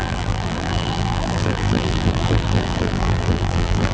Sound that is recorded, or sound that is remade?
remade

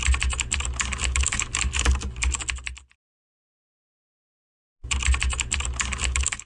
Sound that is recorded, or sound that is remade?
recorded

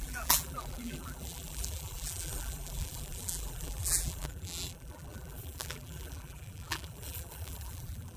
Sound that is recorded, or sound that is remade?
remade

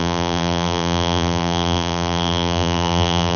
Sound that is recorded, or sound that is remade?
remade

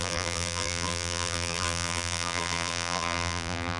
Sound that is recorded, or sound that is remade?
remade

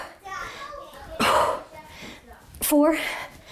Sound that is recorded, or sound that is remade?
recorded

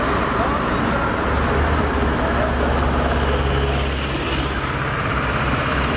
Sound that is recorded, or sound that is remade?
recorded